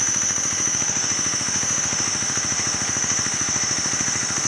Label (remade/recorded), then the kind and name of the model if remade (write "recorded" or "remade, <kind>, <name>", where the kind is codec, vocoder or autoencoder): remade, autoencoder, DAC-VAE